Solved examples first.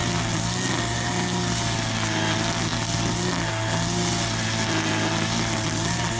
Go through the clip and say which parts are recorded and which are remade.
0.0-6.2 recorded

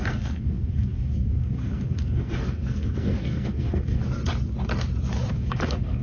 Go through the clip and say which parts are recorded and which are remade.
0.0-4.0 remade; 4.0-5.3 recorded; 5.3-6.0 remade

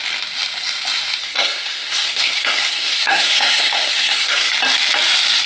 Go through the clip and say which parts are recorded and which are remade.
0.0-1.2 recorded; 1.2-4.5 remade; 4.5-5.5 recorded